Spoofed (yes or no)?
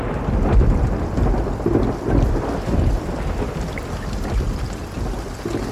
no